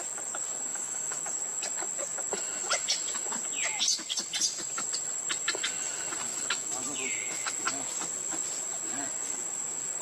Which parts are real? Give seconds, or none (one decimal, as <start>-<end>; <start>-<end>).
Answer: 0.0-0.7; 1.2-6.3; 7.5-10.0